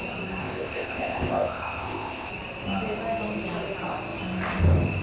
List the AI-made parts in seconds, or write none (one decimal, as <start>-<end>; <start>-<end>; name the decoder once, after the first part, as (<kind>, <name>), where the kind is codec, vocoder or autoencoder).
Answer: 0.4-2.3 (codec, ZipCodec)